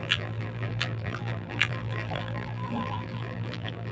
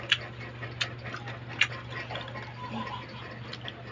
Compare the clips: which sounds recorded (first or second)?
second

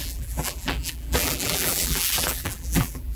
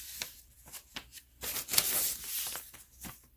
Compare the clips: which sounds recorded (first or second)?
second